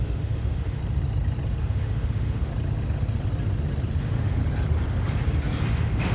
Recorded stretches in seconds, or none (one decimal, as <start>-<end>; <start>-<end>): 0.8-1.6; 2.5-4.0; 4.4-5.6